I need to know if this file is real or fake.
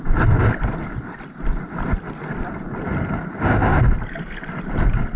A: real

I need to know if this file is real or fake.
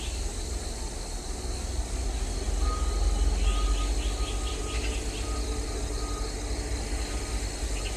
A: real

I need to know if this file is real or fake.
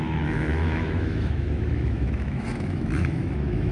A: fake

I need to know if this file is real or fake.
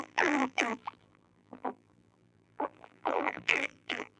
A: fake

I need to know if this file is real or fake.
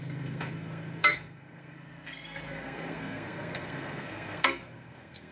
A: fake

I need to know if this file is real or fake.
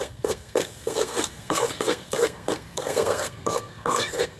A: fake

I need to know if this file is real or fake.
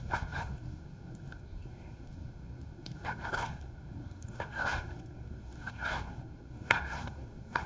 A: fake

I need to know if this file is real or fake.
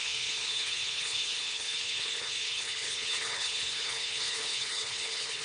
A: fake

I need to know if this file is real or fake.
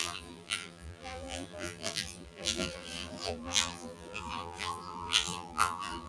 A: fake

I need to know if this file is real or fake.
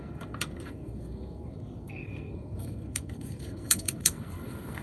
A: fake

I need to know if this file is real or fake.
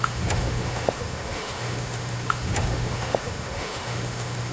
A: fake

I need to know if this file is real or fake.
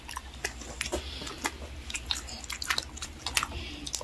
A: real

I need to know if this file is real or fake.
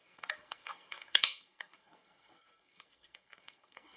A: fake